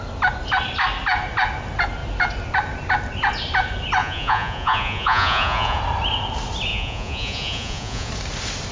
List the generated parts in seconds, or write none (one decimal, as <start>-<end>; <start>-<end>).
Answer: 4.0-5.8; 6.7-8.1